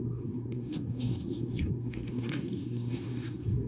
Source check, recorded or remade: remade